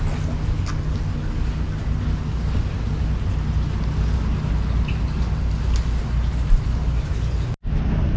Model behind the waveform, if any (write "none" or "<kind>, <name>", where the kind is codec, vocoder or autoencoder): none